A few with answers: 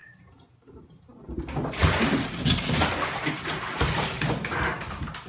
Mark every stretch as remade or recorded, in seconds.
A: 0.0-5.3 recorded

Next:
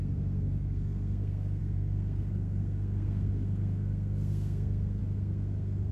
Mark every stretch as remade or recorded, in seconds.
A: 0.0-5.9 remade

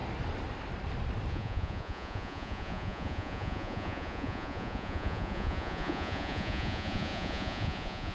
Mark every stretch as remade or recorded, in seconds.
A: 0.0-1.3 recorded; 1.3-8.1 remade

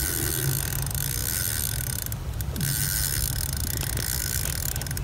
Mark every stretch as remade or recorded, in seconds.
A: 0.0-5.0 recorded

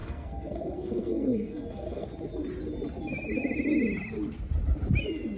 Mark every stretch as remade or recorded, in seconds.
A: 0.0-2.1 remade; 2.1-5.4 recorded

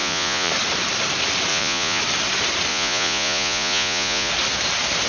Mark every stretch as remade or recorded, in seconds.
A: 0.0-0.5 remade; 0.5-1.5 recorded; 1.5-2.0 remade; 2.0-2.7 recorded; 2.7-4.3 remade; 4.3-5.1 recorded

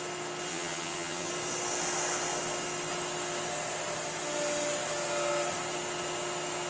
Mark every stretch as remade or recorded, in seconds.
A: 0.0-0.5 recorded; 0.5-1.3 remade; 1.3-6.7 recorded

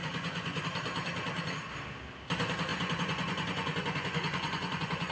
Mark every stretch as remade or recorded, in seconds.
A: 0.0-0.6 remade; 0.6-2.7 recorded; 2.7-5.1 remade